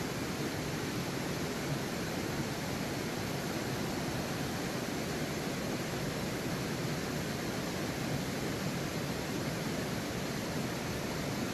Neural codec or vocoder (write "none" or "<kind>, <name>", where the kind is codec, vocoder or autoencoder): none